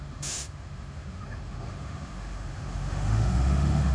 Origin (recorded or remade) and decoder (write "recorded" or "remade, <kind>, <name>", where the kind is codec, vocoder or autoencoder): remade, autoencoder, DAC-VAE